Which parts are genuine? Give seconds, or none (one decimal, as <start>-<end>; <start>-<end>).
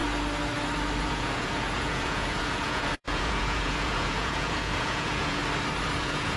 0.0-1.0; 5.4-6.0